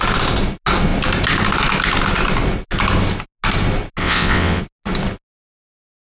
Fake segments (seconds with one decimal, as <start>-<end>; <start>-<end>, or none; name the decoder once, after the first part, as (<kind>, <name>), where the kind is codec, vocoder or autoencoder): 4.0-4.6 (vocoder, WaveNeXt)